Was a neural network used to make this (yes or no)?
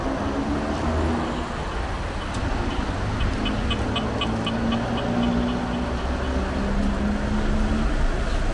no